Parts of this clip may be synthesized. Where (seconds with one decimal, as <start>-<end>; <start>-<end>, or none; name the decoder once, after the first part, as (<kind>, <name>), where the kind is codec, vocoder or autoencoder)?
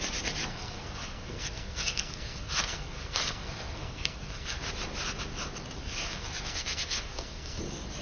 0.5-4.6 (codec, SNAC); 5.8-7.6